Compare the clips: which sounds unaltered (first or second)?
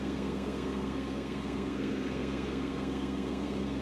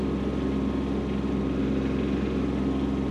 second